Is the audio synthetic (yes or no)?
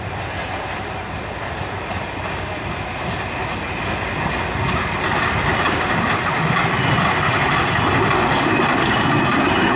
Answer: no